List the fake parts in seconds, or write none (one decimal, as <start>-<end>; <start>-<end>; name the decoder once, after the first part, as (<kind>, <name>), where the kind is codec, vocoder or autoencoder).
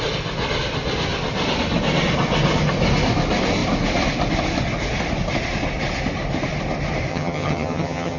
7.1-8.2 (vocoder, HiFi-GAN)